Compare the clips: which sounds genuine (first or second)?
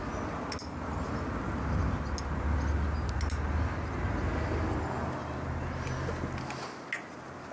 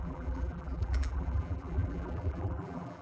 first